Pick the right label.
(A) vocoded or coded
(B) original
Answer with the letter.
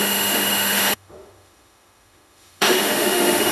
A